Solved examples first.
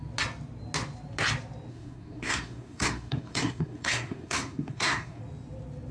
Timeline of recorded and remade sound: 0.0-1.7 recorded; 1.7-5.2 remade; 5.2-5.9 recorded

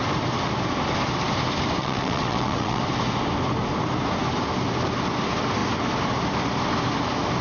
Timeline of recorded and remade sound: 0.0-1.8 recorded; 1.8-2.8 remade; 2.8-7.4 recorded

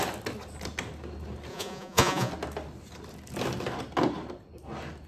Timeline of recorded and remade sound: 0.0-1.5 recorded; 1.5-2.3 remade; 2.3-5.1 recorded

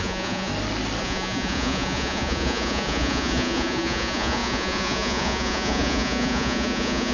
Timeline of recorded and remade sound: 0.0-0.5 remade; 0.5-1.0 recorded; 1.0-7.1 remade